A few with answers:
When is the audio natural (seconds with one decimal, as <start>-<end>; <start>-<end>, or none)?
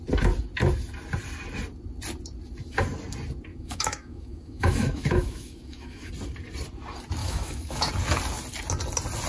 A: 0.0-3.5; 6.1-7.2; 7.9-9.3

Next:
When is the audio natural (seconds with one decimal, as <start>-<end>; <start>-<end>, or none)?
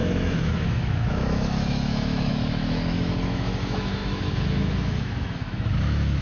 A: none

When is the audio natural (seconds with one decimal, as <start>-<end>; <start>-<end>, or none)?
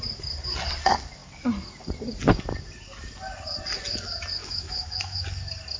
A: 0.0-4.4; 5.2-5.8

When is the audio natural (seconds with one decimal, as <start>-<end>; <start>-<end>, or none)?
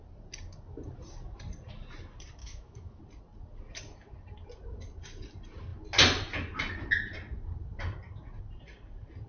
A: 0.0-2.4; 3.0-9.3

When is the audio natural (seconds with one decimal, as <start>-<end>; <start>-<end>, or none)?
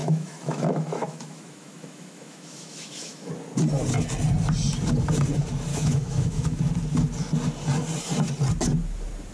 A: 3.3-5.7; 6.6-9.3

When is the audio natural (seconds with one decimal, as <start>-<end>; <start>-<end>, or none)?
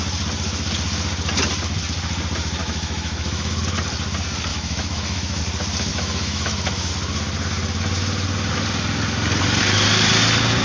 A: 0.0-2.6; 3.6-4.5; 5.4-5.9; 6.9-10.6